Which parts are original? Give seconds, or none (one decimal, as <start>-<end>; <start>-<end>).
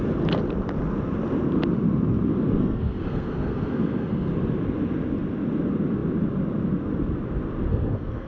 0.0-2.6; 4.3-7.7